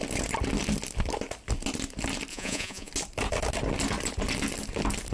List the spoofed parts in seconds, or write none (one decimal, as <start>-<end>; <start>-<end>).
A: 2.3-2.9